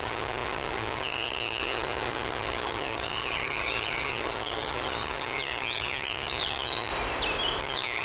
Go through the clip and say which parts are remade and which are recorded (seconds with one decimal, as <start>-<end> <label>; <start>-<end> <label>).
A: 0.0-6.9 remade; 6.9-7.6 recorded; 7.6-8.0 remade